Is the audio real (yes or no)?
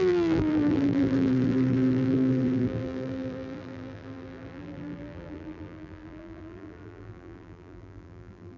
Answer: no